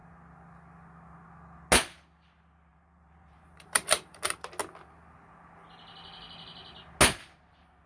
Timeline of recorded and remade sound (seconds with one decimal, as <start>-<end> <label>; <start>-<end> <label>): 0.0-2.7 recorded; 2.7-4.6 remade; 4.6-7.9 recorded